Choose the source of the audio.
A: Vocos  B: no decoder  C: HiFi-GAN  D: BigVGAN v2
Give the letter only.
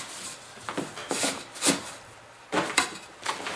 B